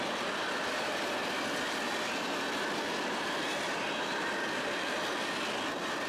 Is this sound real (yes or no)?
yes